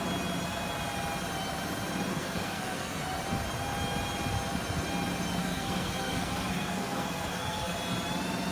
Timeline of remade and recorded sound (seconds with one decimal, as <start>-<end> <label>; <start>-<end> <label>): 0.0-2.1 recorded; 2.1-3.0 remade; 3.0-5.4 recorded; 5.4-7.7 remade; 7.7-8.5 recorded